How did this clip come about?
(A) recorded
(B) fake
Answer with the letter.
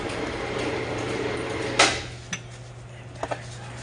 A